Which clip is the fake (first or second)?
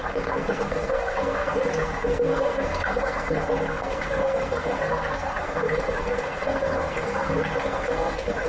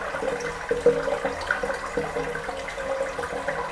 first